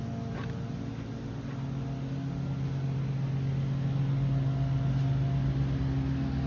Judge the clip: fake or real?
real